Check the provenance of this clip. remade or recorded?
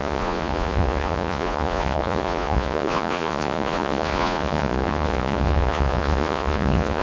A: remade